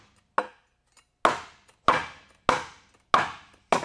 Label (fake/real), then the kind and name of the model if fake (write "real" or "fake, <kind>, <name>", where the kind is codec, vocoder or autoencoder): real